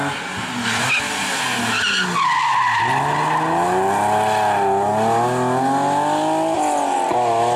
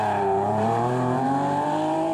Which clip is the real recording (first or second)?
first